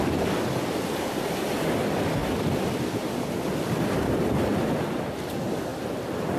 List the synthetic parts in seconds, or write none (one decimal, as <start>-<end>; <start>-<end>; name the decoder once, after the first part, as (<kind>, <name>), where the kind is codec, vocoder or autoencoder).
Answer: 2.2-5.1 (vocoder, BigVGAN v2)